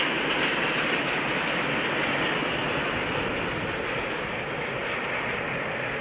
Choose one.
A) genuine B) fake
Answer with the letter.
A